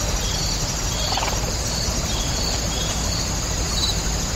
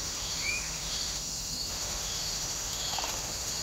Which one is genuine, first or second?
first